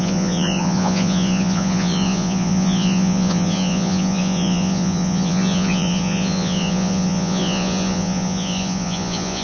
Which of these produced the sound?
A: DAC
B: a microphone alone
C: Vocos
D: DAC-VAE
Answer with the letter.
C